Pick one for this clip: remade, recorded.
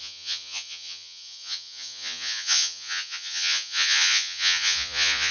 remade